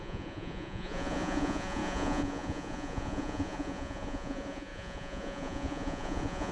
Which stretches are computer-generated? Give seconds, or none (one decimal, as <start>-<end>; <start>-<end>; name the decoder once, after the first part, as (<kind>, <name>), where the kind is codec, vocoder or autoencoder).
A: 0.0-6.5 (vocoder, Vocos)